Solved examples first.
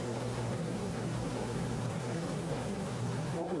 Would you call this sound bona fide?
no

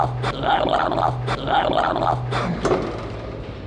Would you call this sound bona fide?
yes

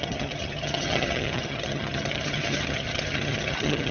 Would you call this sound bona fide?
no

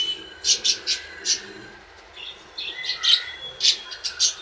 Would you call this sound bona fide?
yes